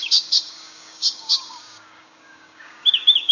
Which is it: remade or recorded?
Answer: remade